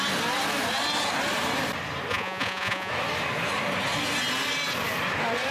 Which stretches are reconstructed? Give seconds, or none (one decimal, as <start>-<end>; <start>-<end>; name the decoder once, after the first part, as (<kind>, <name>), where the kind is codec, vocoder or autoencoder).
2.1-2.9 (vocoder, Vocos)